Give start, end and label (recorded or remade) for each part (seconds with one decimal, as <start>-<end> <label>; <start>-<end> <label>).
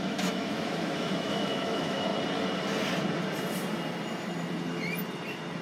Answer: 0.0-2.1 remade; 2.1-5.6 recorded